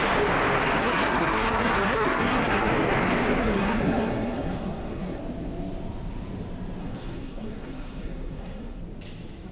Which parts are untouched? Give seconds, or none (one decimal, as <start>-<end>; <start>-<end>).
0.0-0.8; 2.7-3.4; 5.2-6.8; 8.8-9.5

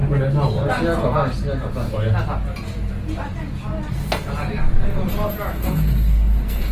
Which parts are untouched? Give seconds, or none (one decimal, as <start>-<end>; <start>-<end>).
0.0-3.9; 4.3-5.5

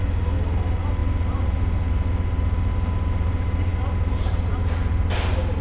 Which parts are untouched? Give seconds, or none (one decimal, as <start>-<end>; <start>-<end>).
0.0-5.6

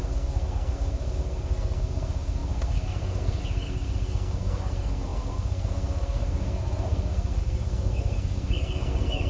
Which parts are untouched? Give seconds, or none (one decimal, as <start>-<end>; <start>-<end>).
none